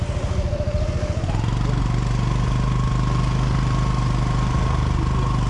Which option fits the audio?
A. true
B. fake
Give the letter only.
A